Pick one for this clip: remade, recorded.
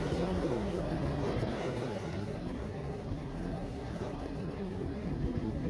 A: remade